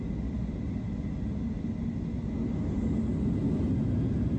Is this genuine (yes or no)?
yes